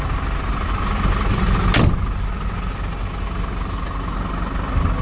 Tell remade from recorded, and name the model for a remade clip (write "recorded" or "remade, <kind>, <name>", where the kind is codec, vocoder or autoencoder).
recorded